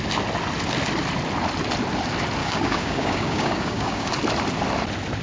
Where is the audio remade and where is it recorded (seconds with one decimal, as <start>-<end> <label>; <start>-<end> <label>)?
0.0-2.4 recorded; 2.4-4.1 remade; 4.1-5.2 recorded